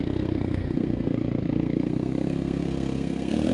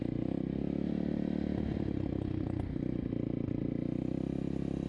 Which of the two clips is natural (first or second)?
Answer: second